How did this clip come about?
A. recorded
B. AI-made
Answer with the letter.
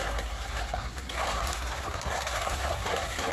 B